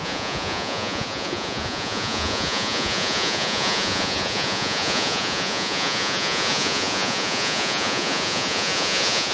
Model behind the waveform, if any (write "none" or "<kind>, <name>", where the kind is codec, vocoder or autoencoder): vocoder, Vocos